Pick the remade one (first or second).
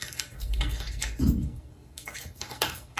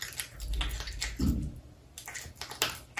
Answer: first